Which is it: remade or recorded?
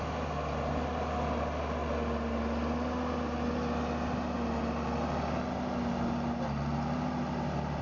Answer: recorded